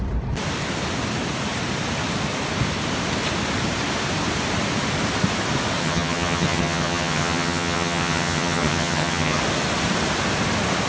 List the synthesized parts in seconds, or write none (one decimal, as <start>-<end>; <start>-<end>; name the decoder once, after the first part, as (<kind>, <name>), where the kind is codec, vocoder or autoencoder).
5.8-9.4 (vocoder, HiFi-GAN)